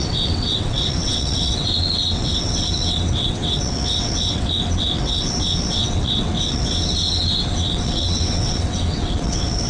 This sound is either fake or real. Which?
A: fake